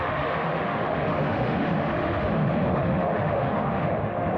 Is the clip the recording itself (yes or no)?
no